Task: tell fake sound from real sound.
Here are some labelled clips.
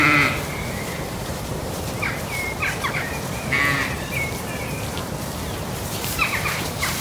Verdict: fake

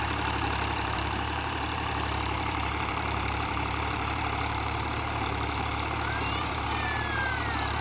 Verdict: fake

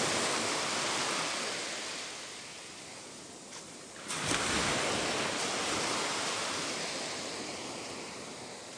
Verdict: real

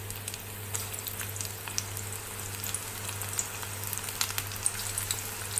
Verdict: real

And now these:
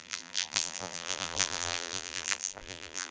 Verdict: fake